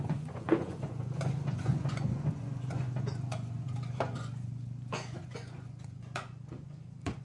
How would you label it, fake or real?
fake